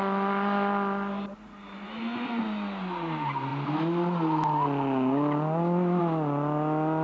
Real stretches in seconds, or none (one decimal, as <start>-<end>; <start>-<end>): 0.0-7.0